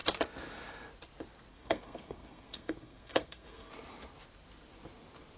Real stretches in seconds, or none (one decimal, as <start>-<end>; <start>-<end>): 0.0-1.5; 3.7-5.4